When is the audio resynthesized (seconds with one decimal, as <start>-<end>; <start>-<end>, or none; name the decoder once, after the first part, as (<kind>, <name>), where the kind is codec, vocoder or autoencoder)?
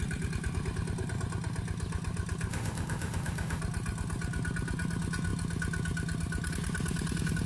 2.5-3.6 (autoencoder, DAC-VAE)